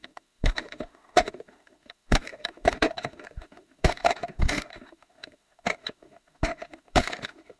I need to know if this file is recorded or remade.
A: remade